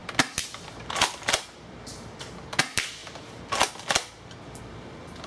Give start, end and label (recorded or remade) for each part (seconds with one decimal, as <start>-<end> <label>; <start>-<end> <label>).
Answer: 0.0-1.4 recorded; 1.4-1.9 remade; 1.9-2.6 recorded; 2.6-5.3 remade